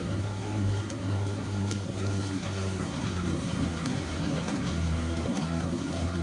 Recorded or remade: remade